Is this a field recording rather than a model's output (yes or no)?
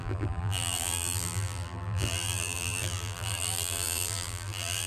no